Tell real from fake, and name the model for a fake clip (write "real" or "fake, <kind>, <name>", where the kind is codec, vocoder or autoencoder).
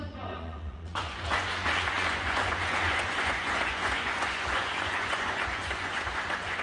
fake, vocoder, Vocos